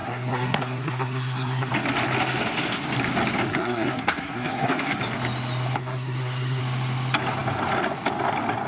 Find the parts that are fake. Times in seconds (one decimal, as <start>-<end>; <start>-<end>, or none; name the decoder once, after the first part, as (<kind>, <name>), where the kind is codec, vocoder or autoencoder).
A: 0.0-1.7 (codec, SNAC); 3.5-5.0; 5.8-6.6

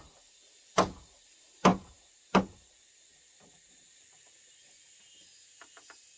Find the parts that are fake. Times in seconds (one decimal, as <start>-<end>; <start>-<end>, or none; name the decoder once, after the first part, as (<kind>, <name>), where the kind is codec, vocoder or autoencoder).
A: none

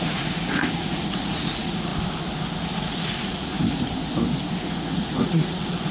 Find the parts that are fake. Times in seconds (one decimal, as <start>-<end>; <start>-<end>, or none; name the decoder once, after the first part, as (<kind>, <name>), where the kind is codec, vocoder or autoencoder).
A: 0.0-1.9 (vocoder, Vocos); 2.5-3.5; 4.6-5.9

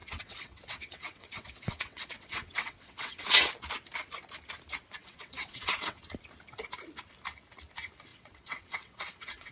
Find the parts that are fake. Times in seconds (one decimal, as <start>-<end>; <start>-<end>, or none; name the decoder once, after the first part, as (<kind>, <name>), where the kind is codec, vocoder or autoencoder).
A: 0.0-3.5 (vocoder, WaveNeXt); 5.0-6.0; 8.1-9.5

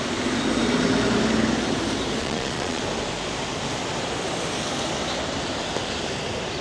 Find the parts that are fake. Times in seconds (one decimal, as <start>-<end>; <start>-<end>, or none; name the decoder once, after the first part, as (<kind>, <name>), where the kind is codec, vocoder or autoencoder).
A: 2.2-2.8 (vocoder, Vocos)

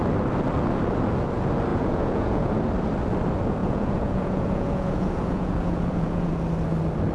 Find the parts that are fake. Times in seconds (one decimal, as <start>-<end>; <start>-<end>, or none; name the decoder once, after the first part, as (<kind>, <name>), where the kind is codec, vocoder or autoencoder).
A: 1.7-2.5 (vocoder, Vocos); 3.6-6.3

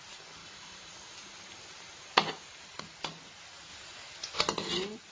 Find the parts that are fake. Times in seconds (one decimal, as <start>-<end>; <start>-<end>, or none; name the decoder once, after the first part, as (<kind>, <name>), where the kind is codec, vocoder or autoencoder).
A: 0.4-0.9 (autoencoder, DAC-VAE)

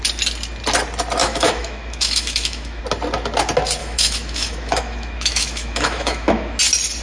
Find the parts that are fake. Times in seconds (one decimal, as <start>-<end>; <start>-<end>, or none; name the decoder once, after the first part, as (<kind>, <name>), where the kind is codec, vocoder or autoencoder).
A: 1.2-2.8 (autoencoder, DAC-VAE); 3.8-6.6